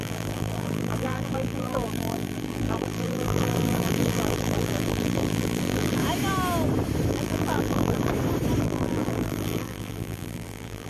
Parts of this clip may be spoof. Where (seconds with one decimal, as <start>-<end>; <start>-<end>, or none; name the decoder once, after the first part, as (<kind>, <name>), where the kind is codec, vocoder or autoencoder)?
0.0-6.0 (vocoder, BigVGAN v2); 7.1-8.1; 8.6-10.9